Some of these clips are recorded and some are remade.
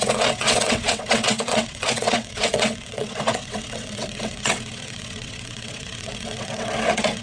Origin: remade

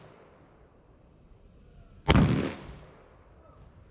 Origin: recorded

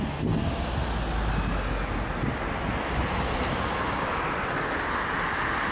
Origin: recorded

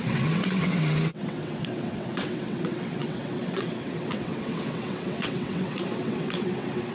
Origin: remade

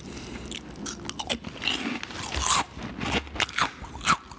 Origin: recorded